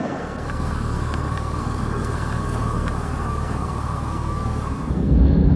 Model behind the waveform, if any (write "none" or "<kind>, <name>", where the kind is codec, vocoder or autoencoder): codec, SNAC